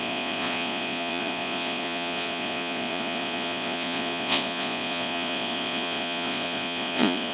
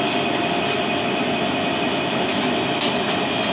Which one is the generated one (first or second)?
first